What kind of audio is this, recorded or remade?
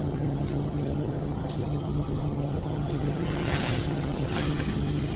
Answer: remade